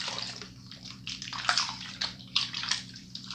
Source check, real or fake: fake